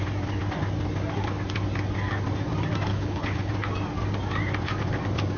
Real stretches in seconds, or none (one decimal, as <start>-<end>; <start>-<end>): 0.0-2.9; 3.5-5.4